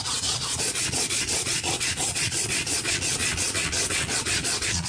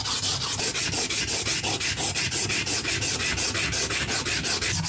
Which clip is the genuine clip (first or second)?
second